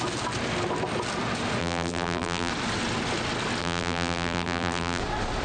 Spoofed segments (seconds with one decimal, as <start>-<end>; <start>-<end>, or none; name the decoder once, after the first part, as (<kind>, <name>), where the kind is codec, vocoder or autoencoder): 1.6-2.5 (vocoder, BigVGAN v2); 3.6-5.0